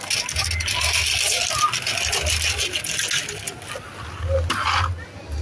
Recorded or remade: recorded